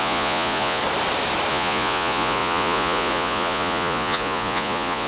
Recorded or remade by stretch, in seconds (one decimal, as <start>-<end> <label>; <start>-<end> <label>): 0.0-0.8 remade; 0.8-1.5 recorded; 1.5-5.1 remade